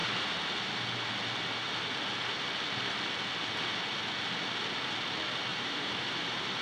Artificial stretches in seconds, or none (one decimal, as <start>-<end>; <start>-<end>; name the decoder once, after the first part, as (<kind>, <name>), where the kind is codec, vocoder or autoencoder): 0.0-0.8 (vocoder, BigVGAN v2); 5.5-6.6